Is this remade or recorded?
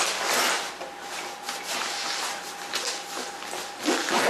recorded